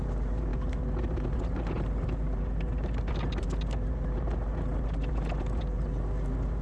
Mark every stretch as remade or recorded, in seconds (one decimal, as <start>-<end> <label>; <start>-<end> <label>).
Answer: 0.0-6.6 recorded